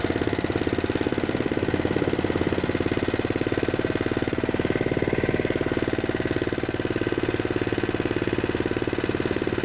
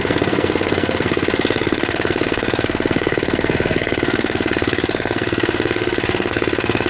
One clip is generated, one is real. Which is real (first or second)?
first